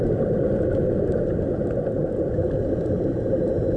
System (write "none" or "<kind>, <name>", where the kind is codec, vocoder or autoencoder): none